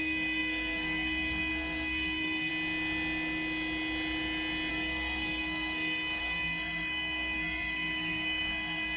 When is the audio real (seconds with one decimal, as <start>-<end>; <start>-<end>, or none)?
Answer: 2.5-4.7